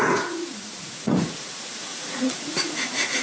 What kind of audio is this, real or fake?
fake